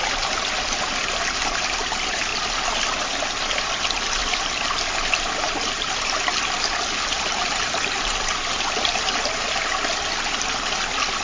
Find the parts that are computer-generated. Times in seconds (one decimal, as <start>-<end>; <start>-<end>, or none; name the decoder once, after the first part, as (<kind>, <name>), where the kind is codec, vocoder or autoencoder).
none